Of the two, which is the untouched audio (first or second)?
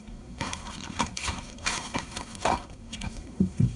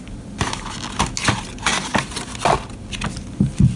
second